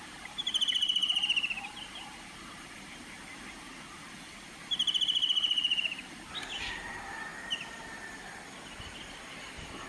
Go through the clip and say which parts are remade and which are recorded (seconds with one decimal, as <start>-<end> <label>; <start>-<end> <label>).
0.0-9.9 recorded